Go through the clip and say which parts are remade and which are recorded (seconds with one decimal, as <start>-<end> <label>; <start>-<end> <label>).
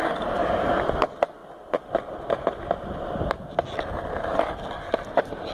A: 0.0-5.5 recorded